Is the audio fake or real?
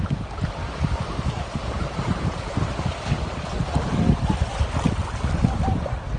real